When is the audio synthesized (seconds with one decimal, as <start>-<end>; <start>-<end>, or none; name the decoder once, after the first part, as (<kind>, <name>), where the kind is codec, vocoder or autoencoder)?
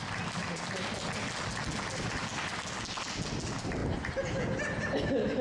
none